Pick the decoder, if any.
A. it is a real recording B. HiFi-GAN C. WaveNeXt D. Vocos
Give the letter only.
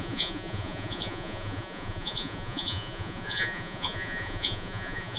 D